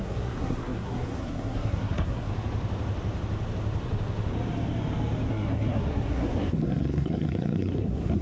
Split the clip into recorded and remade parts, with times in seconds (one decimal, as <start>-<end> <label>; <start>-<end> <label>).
0.0-2.3 remade; 2.3-5.3 recorded; 5.3-8.2 remade